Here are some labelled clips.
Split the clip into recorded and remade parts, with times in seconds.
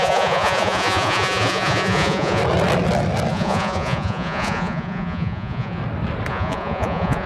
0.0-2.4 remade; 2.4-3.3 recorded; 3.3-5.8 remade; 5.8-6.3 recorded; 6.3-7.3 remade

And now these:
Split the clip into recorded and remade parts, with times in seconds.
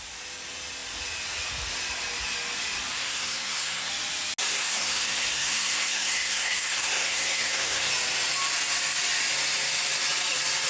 0.0-2.9 recorded; 2.9-3.9 remade; 3.9-4.5 recorded; 4.5-7.9 remade; 7.9-10.7 recorded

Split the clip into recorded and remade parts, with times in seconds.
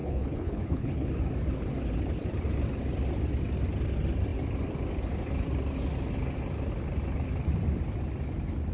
0.0-1.1 remade; 1.1-8.7 recorded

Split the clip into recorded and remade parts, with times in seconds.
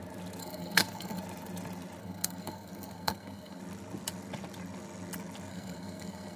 0.0-0.4 recorded; 0.4-1.2 remade; 1.2-2.0 recorded; 2.0-3.6 remade; 3.6-5.5 recorded; 5.5-6.4 remade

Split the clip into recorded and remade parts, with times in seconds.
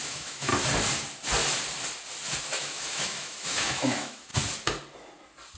0.0-0.5 remade; 0.5-2.4 recorded; 2.4-4.3 remade; 4.3-5.6 recorded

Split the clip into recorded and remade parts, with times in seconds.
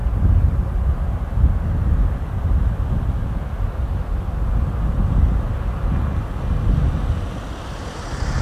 0.0-8.4 recorded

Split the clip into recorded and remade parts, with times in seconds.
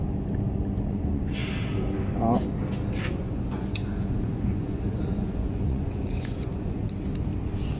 0.0-0.8 recorded; 0.8-1.4 remade; 1.4-3.2 recorded; 3.2-6.8 remade; 6.8-7.8 recorded